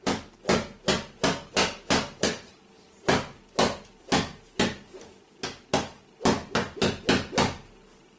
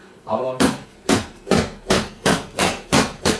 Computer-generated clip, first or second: second